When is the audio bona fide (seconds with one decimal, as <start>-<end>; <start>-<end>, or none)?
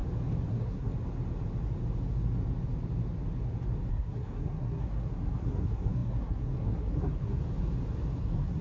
0.0-0.5; 0.9-3.9; 7.4-8.2